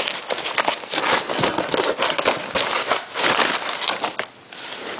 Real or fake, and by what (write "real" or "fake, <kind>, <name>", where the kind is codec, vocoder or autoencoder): real